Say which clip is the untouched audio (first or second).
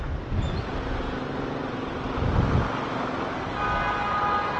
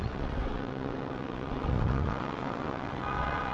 first